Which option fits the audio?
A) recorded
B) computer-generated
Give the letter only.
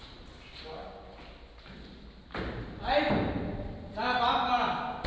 A